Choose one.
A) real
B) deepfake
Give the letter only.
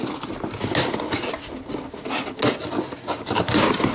A